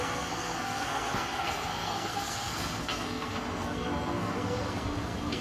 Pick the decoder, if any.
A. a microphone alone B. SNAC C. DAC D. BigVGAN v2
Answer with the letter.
B